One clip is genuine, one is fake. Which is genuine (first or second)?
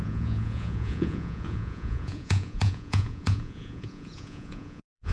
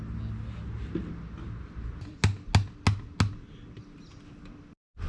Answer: second